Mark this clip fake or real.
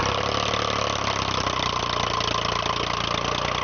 real